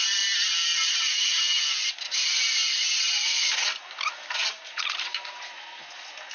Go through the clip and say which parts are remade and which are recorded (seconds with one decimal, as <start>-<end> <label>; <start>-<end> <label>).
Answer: 0.0-4.4 recorded; 4.4-5.1 remade; 5.1-6.3 recorded

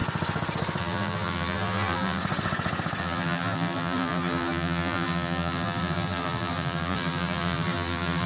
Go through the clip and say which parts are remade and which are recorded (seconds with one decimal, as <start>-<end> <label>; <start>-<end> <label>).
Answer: 0.0-0.8 recorded; 0.8-2.2 remade; 2.2-3.0 recorded; 3.0-8.3 remade

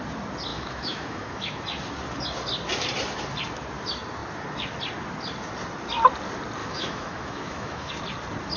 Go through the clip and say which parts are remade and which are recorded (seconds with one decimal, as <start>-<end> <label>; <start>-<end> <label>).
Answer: 0.0-0.5 recorded; 0.5-1.6 remade; 1.6-6.6 recorded; 6.6-7.9 remade; 7.9-8.6 recorded

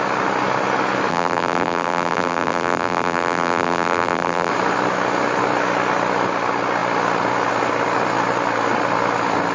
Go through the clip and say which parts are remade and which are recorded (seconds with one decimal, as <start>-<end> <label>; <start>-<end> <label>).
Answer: 0.0-1.1 recorded; 1.1-4.5 remade; 4.5-9.5 recorded

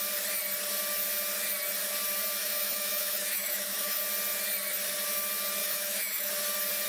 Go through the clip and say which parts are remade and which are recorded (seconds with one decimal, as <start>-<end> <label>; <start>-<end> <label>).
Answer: 0.0-2.4 recorded; 2.4-4.0 remade; 4.0-5.6 recorded; 5.6-6.3 remade; 6.3-6.9 recorded

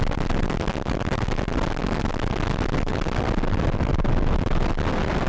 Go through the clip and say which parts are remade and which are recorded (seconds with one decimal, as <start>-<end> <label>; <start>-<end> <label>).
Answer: 0.0-5.3 recorded

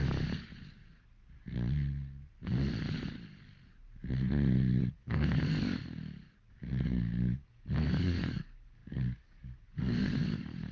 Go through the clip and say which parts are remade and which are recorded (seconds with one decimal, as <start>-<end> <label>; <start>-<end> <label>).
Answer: 0.0-0.5 remade; 0.5-4.8 recorded; 4.8-5.8 remade; 5.8-6.5 recorded; 6.5-10.7 remade